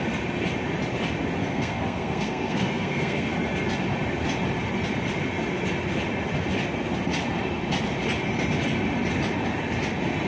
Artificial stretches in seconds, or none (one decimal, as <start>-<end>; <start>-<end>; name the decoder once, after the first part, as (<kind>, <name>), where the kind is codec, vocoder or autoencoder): 1.4-3.3 (codec, SNAC)